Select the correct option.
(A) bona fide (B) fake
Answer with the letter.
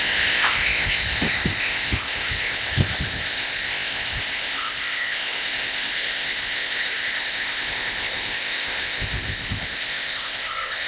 B